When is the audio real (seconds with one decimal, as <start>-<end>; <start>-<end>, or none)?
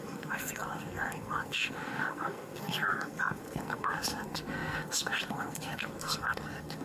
none